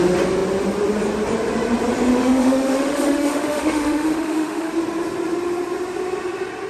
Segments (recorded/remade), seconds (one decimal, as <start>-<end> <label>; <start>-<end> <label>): 0.0-2.1 recorded; 2.1-4.7 remade; 4.7-6.7 recorded